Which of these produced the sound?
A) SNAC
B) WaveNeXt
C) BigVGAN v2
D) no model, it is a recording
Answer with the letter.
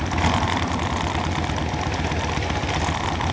D